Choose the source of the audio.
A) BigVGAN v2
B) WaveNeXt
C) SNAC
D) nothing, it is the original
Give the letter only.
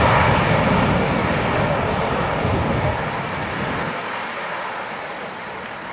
D